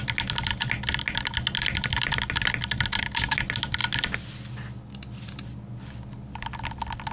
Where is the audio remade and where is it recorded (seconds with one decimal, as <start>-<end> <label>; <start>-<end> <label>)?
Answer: 0.0-7.1 recorded